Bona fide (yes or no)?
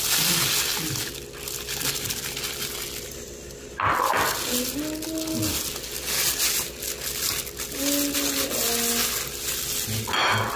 yes